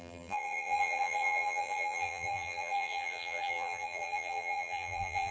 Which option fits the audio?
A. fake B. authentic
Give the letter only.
A